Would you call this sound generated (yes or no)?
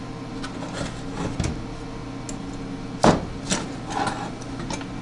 no